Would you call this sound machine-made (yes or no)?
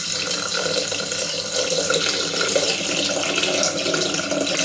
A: no